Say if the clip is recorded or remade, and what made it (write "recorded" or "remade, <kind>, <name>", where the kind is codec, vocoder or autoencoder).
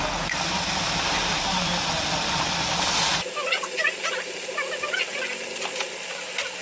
recorded